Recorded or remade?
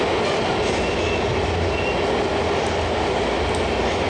recorded